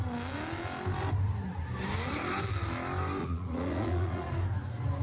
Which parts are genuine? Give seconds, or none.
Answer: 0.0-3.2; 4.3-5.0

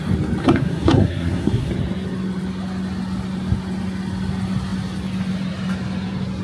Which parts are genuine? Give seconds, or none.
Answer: 0.0-0.4; 1.7-6.4

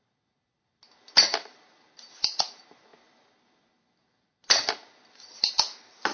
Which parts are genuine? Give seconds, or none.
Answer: 0.0-6.1

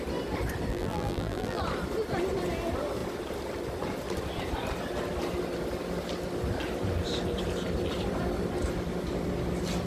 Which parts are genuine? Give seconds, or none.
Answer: 0.0-0.7; 1.6-9.9

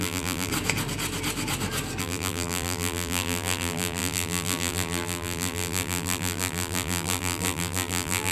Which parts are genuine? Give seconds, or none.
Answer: 0.5-2.0

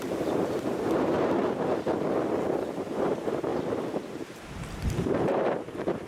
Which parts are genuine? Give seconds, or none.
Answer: 1.4-2.9; 3.5-4.8

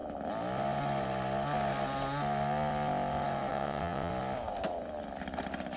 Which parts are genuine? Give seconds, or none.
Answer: 0.0-3.5; 4.1-5.8